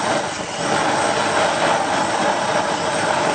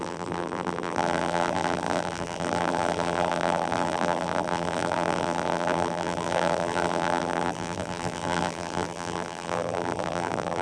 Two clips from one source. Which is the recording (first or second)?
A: first